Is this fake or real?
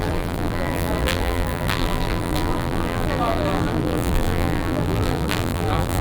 fake